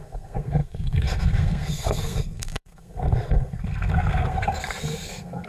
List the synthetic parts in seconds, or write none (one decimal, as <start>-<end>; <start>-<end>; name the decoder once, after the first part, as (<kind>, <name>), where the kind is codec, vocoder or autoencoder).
0.0-5.5 (codec, SNAC)

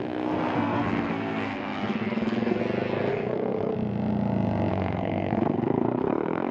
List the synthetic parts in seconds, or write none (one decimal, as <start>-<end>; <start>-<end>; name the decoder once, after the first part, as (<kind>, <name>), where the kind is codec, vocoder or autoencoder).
0.0-2.6 (codec, SNAC); 3.1-3.7; 4.7-6.5

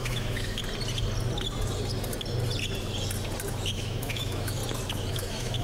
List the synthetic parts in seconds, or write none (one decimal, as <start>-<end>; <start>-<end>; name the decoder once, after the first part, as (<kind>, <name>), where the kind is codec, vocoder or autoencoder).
0.0-0.6 (autoencoder, DAC-VAE); 3.5-4.6; 5.1-5.6

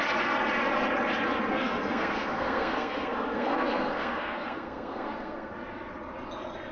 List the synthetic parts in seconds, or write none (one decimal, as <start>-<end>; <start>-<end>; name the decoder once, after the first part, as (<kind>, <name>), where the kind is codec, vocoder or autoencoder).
1.5-5.5 (codec, SNAC)

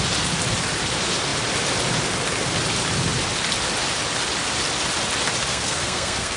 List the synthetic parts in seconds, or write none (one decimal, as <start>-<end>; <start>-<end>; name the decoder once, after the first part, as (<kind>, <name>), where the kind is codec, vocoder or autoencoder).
5.5-6.4 (codec, SNAC)

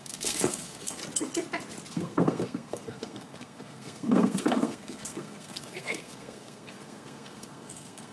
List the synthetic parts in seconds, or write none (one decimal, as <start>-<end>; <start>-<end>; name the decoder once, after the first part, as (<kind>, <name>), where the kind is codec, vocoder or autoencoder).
0.0-1.0 (codec, SNAC); 1.9-8.1